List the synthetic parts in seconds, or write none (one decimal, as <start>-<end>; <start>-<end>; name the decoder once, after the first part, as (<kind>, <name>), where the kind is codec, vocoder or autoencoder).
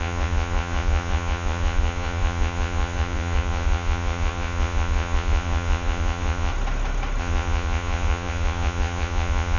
0.0-6.5 (vocoder, Vocos); 7.2-9.6